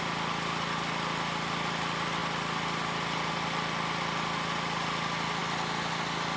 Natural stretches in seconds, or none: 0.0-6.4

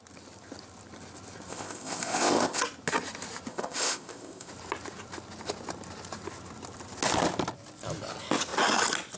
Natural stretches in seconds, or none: 0.0-1.5; 2.6-3.5; 4.5-9.2

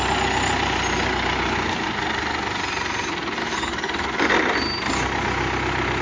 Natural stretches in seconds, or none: 0.0-3.4; 4.3-6.0

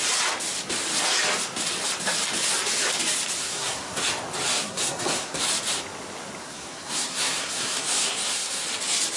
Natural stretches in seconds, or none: 0.0-3.4; 4.0-4.5; 5.4-6.4; 8.6-9.2

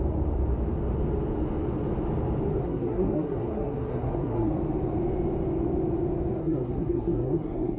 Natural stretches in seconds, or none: 0.0-2.6; 4.5-6.4

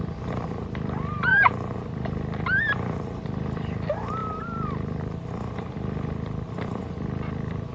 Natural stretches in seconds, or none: 1.3-2.6